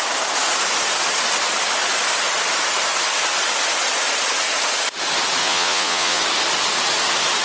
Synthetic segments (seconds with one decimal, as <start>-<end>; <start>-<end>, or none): 5.4-6.2